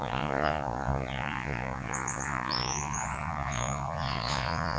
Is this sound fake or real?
fake